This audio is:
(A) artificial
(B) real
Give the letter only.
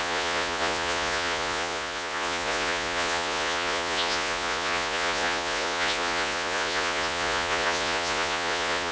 A